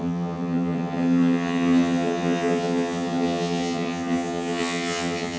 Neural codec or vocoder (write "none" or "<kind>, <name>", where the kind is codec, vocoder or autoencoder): vocoder, HiFi-GAN